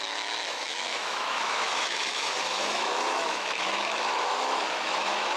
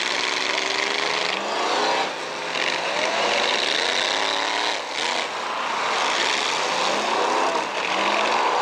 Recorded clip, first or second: second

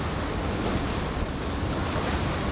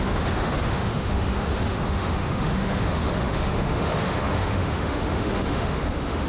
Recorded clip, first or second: first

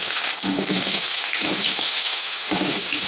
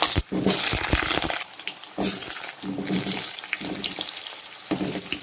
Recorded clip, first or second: second